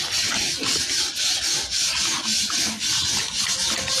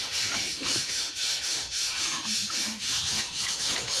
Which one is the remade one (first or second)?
second